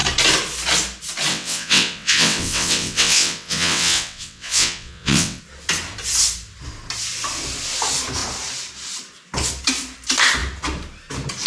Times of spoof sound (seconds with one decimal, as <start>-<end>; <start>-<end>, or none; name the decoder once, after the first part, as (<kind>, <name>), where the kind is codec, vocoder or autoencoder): 1.3-5.4 (vocoder, WaveNeXt)